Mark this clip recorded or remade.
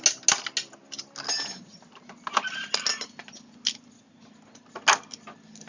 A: recorded